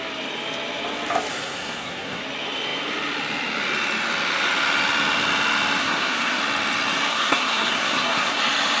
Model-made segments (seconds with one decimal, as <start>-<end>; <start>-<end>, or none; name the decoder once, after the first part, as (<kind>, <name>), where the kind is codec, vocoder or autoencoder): 1.3-2.2 (codec, SNAC); 5.8-6.4; 7.1-8.4